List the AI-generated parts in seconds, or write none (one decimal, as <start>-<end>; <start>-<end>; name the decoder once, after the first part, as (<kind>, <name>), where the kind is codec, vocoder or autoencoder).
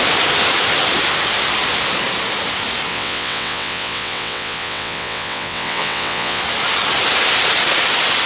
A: 2.9-6.4 (vocoder, WaveNeXt)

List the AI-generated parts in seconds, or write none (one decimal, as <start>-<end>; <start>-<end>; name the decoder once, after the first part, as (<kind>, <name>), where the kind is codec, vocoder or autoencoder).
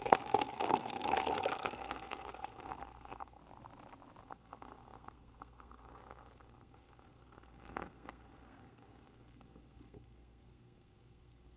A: 0.0-3.4 (codec, SNAC); 4.2-11.6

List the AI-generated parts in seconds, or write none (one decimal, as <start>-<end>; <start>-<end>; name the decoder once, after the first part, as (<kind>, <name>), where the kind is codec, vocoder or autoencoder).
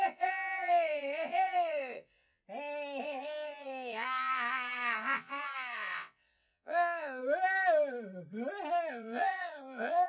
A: 0.0-2.4 (vocoder, WaveNeXt); 3.0-7.2; 8.9-10.1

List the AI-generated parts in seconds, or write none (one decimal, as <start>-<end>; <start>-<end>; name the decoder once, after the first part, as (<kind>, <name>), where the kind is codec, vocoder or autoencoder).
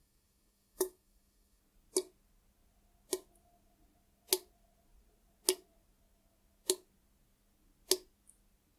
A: 0.0-1.6 (codec, DAC)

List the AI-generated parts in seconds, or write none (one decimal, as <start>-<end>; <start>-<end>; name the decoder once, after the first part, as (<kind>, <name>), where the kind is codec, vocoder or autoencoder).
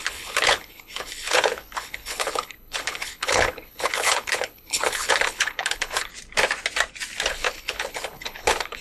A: 0.0-6.1 (codec, HILCodec); 7.3-8.8